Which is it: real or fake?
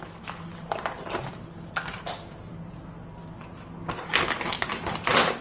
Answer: real